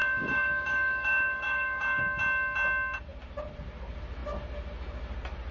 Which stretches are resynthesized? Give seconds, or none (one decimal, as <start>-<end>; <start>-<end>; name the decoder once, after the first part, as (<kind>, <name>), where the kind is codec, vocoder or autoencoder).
0.0-2.2 (codec, DAC)